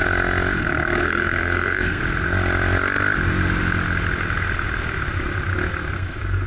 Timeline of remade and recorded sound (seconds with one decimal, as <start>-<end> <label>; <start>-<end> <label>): 0.0-0.6 recorded; 0.6-2.0 remade; 2.0-5.9 recorded; 5.9-6.5 remade

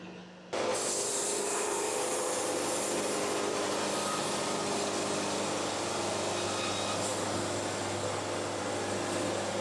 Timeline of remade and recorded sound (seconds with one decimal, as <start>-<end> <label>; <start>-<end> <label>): 0.0-9.6 recorded

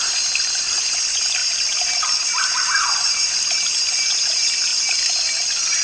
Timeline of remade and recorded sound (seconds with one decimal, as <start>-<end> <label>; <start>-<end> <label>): 0.0-5.8 recorded

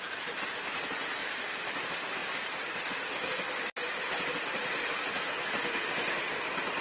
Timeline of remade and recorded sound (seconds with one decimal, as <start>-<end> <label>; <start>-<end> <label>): 0.0-6.8 recorded

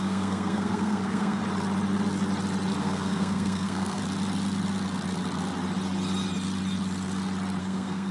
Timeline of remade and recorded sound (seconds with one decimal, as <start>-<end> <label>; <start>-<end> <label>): 0.0-1.4 remade; 1.4-2.8 recorded; 2.8-4.0 remade; 4.0-7.6 recorded; 7.6-8.1 remade

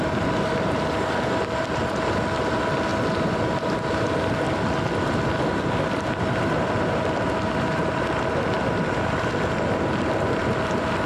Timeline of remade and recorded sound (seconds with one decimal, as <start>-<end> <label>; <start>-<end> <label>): 0.0-11.1 recorded

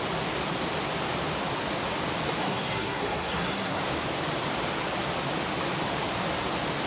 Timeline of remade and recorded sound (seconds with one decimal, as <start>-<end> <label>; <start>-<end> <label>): 0.0-2.4 recorded; 2.4-3.8 remade; 3.8-6.9 recorded

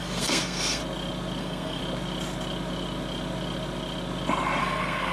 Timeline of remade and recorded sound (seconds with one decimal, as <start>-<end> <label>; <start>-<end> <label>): 0.0-0.8 remade; 0.8-1.4 recorded; 1.4-1.8 remade; 1.8-4.6 recorded; 4.6-5.1 remade